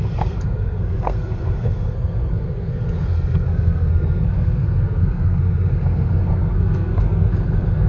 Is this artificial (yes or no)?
yes